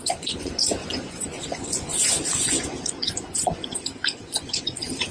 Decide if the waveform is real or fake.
fake